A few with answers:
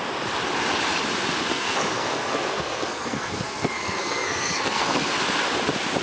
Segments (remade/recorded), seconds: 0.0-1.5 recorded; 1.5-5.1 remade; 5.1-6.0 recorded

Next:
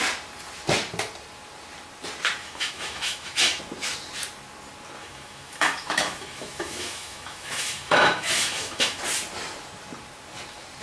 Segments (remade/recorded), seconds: 0.0-2.4 recorded; 2.4-3.6 remade; 3.6-5.0 recorded; 5.0-9.0 remade; 9.0-10.8 recorded

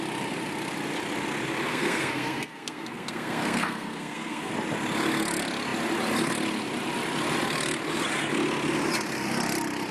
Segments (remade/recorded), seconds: 0.0-1.7 recorded; 1.7-4.5 remade; 4.5-9.9 recorded

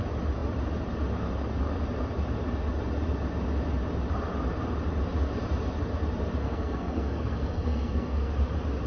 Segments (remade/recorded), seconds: 0.0-6.4 recorded; 6.4-8.3 remade; 8.3-8.9 recorded

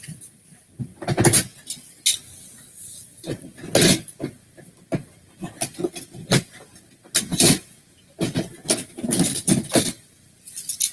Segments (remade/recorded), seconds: 0.0-7.3 recorded; 7.3-7.8 remade; 7.8-10.9 recorded

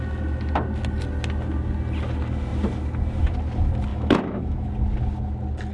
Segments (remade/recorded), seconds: 0.0-3.9 recorded; 3.9-4.7 remade; 4.7-5.7 recorded

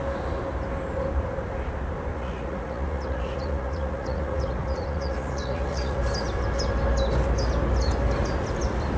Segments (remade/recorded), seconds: 0.0-2.1 recorded; 2.1-6.0 remade; 6.0-9.0 recorded